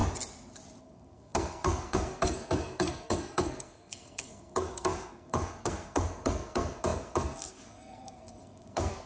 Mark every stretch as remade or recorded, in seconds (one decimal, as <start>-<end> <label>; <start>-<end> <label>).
0.0-0.8 recorded; 0.8-9.1 remade